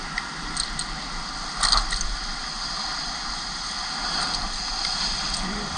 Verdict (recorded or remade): recorded